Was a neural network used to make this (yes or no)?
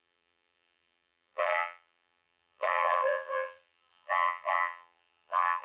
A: yes